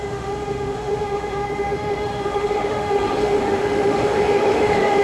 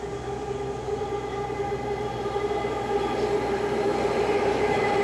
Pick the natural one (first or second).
second